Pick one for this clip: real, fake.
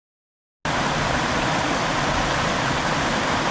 real